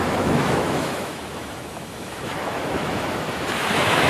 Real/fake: fake